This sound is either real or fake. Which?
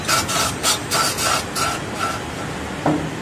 real